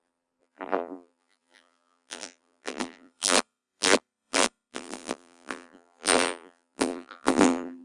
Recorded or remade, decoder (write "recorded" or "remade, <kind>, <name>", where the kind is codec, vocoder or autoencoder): remade, vocoder, BigVGAN v2